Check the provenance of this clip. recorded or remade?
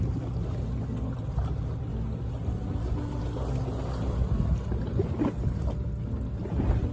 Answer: recorded